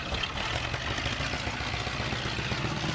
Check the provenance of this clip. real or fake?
real